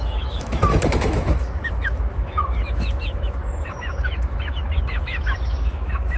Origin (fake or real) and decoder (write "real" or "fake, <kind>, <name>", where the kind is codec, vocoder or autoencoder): fake, autoencoder, DAC-VAE